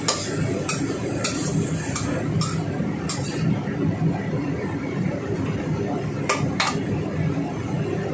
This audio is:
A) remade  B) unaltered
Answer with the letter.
B